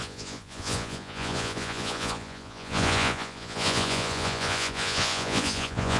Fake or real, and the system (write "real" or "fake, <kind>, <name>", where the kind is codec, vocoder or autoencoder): fake, vocoder, Vocos